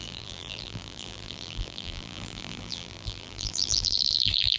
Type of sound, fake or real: fake